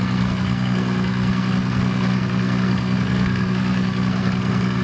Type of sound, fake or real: fake